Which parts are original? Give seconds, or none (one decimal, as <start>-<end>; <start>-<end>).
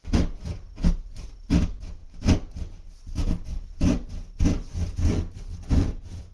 0.0-6.3